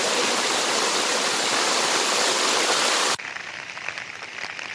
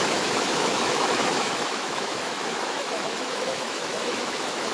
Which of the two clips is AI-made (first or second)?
second